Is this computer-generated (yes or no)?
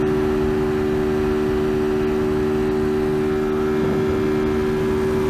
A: no